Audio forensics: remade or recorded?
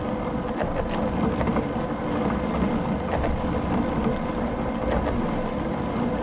recorded